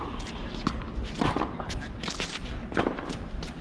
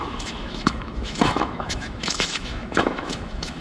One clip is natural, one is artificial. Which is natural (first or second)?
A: first